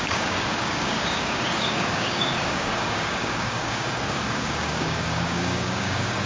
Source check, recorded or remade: remade